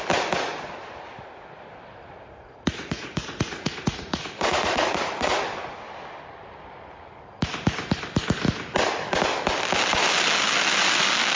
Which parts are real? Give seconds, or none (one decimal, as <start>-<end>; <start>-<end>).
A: 0.0-2.1; 5.4-11.4